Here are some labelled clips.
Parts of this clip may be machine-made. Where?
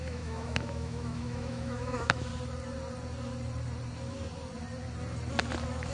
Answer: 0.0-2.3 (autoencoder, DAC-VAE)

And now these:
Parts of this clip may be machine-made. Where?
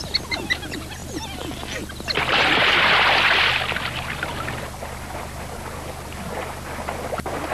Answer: none